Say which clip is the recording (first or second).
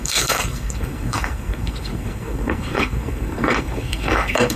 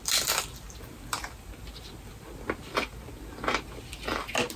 second